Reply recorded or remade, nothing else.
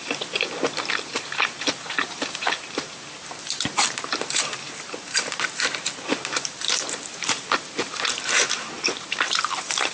remade